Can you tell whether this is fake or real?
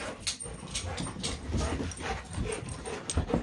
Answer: real